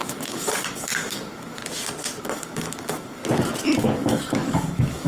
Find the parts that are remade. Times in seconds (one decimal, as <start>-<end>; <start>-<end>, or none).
0.0-1.6; 2.2-3.2; 3.8-5.1